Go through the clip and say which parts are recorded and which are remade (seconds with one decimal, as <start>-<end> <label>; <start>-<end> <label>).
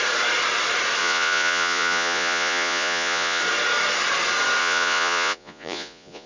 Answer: 0.0-1.0 recorded; 1.0-3.4 remade; 3.4-4.6 recorded; 4.6-6.3 remade